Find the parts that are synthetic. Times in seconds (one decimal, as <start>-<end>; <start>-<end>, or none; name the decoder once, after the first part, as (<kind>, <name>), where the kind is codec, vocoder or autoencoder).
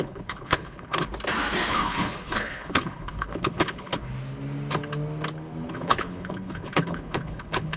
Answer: 0.0-1.1 (codec, HILCodec); 1.7-4.1; 5.7-7.8